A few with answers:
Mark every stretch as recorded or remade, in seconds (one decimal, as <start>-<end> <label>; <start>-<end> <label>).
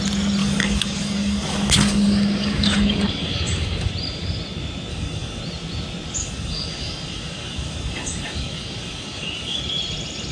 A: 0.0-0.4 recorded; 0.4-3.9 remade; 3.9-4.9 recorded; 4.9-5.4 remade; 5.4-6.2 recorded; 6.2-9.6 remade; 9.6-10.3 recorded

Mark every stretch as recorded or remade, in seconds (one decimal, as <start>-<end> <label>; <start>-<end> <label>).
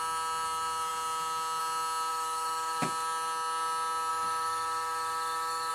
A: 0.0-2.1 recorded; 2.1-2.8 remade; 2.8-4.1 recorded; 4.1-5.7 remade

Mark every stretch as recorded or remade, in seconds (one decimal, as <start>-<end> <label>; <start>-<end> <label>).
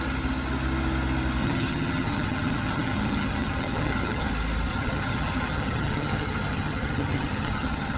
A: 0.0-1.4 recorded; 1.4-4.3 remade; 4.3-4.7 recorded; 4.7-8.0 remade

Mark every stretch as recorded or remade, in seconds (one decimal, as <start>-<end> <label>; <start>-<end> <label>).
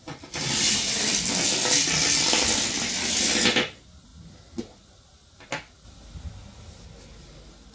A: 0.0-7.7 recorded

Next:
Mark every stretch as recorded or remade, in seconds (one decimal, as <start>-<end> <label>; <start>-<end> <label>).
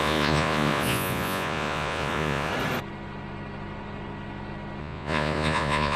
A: 0.0-2.5 remade; 2.5-4.8 recorded; 4.8-6.0 remade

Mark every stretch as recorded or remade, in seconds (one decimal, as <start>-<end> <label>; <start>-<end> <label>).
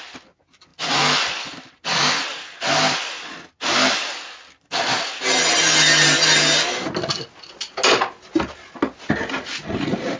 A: 0.0-10.2 recorded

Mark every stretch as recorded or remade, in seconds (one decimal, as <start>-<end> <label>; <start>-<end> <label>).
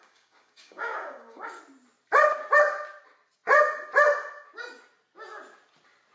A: 0.0-1.6 remade; 1.6-6.1 recorded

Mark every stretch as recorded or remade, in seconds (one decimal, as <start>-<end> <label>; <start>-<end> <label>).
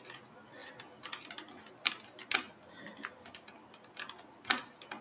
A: 0.0-5.0 recorded